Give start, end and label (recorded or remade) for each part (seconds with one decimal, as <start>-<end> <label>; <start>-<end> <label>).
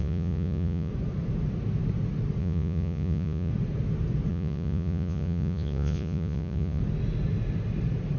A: 0.0-0.9 remade; 0.9-2.4 recorded; 2.4-3.5 remade; 3.5-4.3 recorded; 4.3-6.8 remade; 6.8-8.2 recorded